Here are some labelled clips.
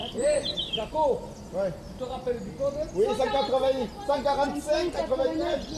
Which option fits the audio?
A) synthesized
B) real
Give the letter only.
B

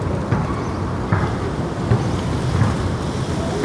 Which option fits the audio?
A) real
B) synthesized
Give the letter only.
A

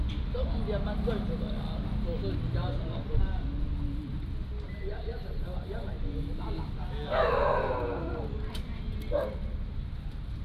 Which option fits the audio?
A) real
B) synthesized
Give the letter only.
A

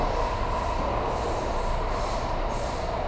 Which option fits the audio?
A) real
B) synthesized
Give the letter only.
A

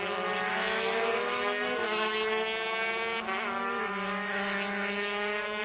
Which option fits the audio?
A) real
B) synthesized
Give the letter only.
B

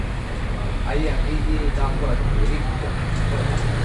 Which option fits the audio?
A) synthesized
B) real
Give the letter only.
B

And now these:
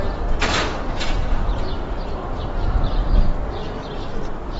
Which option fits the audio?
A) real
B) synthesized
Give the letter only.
A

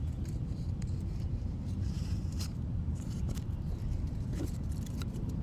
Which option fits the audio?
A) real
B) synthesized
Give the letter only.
B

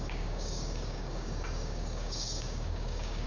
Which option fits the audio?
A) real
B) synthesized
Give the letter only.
B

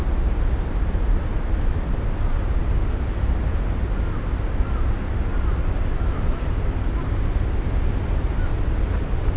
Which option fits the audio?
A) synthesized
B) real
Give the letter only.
B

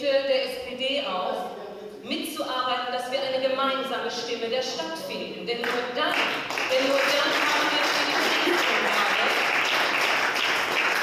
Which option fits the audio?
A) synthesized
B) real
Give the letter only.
B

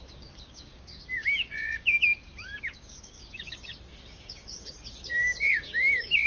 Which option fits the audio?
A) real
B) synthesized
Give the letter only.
B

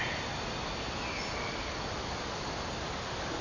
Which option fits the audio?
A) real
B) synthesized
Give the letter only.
A